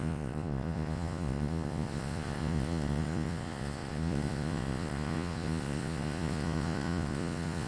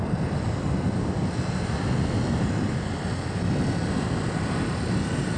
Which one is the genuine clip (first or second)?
second